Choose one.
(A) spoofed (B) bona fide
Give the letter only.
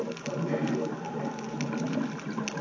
B